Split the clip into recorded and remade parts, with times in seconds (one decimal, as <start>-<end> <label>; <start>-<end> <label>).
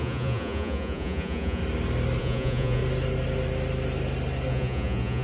0.0-1.6 remade; 1.6-2.2 recorded; 2.2-2.8 remade; 2.8-4.5 recorded; 4.5-5.2 remade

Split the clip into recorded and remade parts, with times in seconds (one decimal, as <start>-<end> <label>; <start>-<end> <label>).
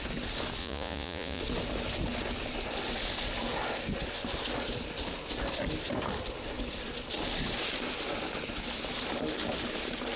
0.0-0.6 recorded; 0.6-1.4 remade; 1.4-10.2 recorded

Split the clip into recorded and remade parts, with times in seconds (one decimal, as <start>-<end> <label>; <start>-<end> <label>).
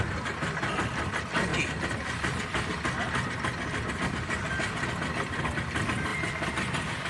0.0-7.1 recorded